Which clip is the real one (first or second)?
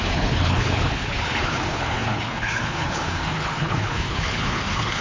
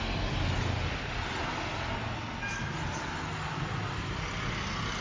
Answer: second